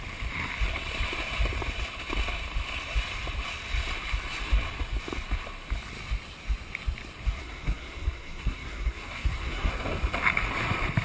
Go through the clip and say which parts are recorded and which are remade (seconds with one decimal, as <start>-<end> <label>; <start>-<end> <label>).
0.0-7.4 recorded; 7.4-9.7 remade; 9.7-11.0 recorded

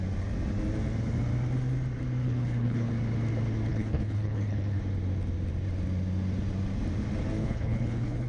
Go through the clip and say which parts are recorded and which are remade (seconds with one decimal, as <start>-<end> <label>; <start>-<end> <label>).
0.0-2.2 recorded; 2.2-2.9 remade; 2.9-3.7 recorded; 3.7-4.8 remade; 4.8-7.4 recorded; 7.4-8.3 remade

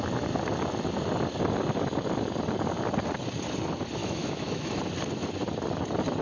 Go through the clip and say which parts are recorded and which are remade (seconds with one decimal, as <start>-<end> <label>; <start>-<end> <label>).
0.0-4.0 recorded; 4.0-4.8 remade; 4.8-6.2 recorded

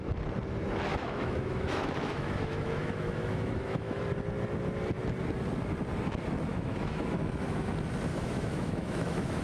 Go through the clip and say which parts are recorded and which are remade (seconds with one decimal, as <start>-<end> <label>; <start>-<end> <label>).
0.0-0.9 recorded; 0.9-4.0 remade; 4.0-6.5 recorded; 6.5-7.7 remade; 7.7-8.1 recorded; 8.1-9.4 remade

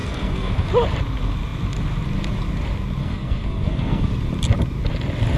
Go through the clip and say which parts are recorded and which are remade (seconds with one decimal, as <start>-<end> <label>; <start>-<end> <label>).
0.0-0.7 remade; 0.7-3.0 recorded; 3.0-4.1 remade; 4.1-5.4 recorded

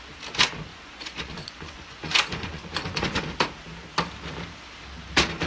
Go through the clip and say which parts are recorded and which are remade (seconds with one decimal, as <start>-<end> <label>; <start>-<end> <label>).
0.0-0.7 recorded; 0.7-3.2 remade; 3.2-5.5 recorded

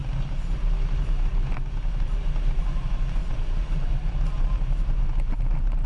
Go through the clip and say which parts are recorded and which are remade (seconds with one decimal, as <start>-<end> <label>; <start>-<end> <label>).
0.0-2.6 remade; 2.6-3.2 recorded; 3.2-5.9 remade